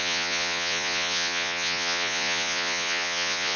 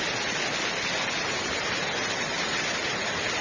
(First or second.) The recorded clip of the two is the second